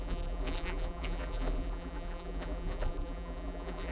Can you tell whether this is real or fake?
fake